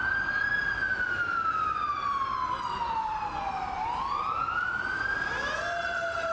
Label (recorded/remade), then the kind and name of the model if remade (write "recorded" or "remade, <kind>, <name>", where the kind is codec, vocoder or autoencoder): recorded